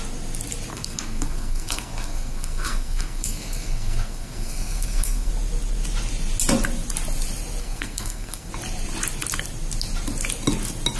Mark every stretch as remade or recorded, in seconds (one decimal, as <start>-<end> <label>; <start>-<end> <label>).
0.0-0.7 recorded; 0.7-5.3 remade; 5.3-7.6 recorded; 7.6-8.5 remade; 8.5-11.0 recorded